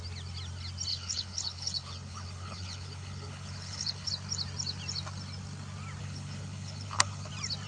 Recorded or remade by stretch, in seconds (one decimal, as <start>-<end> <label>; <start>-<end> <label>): 0.0-0.9 recorded; 0.9-4.1 remade; 4.1-6.0 recorded; 6.0-7.3 remade; 7.3-7.7 recorded